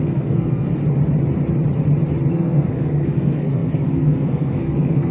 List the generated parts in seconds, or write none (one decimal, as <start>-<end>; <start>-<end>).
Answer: 0.0-0.8; 2.3-5.1